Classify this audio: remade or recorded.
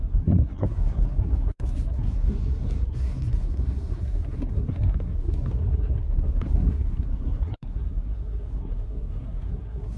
remade